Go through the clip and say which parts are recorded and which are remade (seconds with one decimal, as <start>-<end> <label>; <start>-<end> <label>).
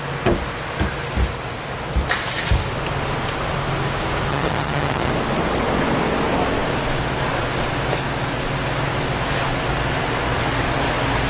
0.0-4.3 recorded; 4.3-5.1 remade; 5.1-11.3 recorded